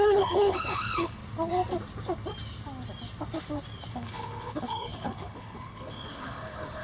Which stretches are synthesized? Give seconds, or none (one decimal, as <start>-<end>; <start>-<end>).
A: 0.0-1.2; 3.9-6.8

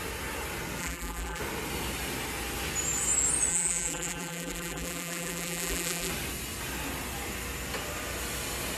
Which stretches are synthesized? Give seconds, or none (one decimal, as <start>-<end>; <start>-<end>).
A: 0.8-1.4; 3.5-6.1